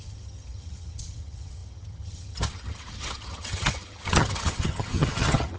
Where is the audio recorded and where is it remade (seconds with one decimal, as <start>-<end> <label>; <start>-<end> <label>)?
0.0-5.6 remade